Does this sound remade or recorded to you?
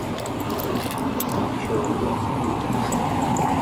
recorded